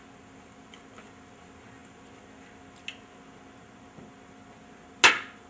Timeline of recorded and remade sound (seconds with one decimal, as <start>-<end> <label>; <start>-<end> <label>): 0.0-5.5 recorded